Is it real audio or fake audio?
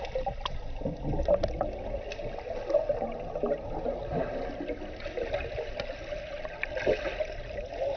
real